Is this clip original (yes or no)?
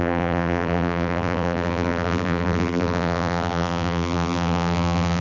no